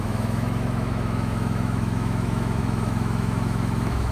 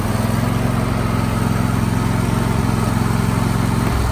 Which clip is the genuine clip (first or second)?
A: second